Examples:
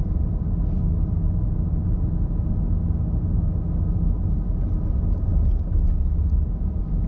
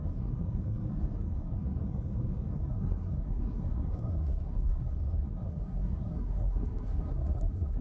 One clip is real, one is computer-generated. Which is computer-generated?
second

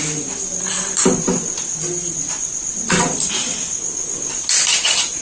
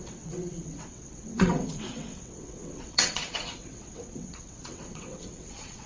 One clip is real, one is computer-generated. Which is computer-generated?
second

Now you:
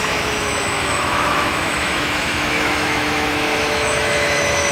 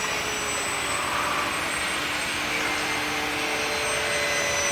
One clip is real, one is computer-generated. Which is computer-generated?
first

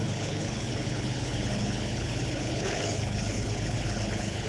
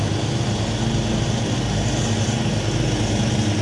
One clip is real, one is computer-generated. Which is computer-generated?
first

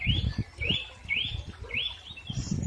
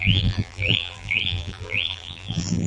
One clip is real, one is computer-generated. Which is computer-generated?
second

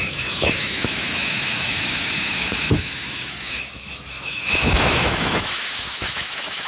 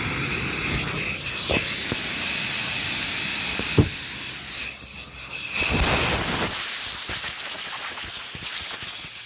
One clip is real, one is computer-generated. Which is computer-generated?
first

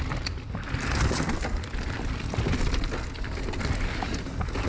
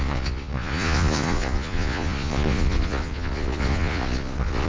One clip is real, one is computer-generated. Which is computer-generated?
second